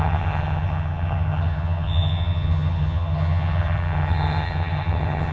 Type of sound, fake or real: fake